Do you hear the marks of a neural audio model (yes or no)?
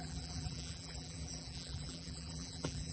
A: yes